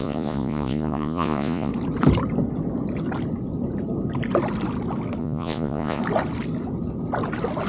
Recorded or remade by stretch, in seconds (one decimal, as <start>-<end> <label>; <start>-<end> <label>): 0.0-1.7 remade; 1.7-5.2 recorded; 5.2-6.0 remade; 6.0-7.7 recorded